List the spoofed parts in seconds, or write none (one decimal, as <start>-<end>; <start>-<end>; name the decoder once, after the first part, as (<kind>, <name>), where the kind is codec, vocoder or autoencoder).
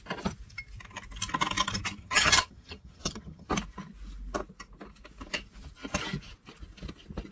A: 2.0-3.5 (vocoder, HiFi-GAN)